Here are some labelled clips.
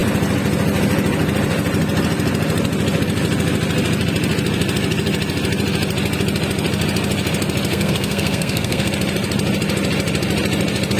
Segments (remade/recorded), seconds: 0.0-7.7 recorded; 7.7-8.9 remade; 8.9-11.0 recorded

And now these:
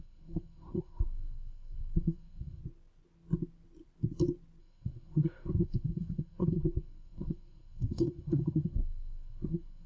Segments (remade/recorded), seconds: 0.0-2.6 remade; 2.6-4.6 recorded; 4.6-9.9 remade

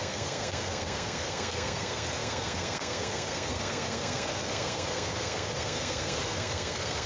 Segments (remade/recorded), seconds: 0.0-7.1 remade